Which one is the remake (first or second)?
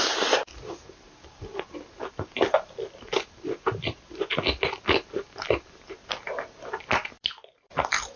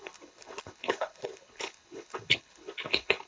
second